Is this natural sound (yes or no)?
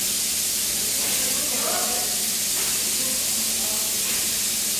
yes